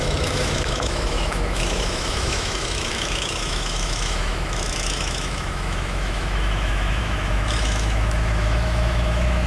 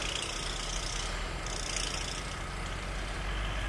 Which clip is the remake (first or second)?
first